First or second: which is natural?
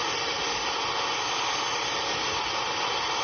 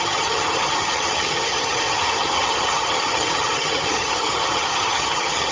first